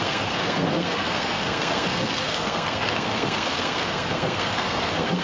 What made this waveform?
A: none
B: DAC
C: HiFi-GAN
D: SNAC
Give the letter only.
D